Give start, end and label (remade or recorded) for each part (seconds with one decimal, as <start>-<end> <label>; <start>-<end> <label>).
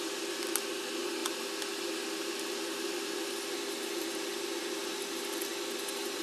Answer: 0.0-6.2 recorded